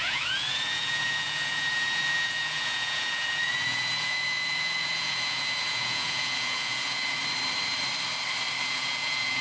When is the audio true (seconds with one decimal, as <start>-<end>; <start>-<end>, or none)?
7.2-8.6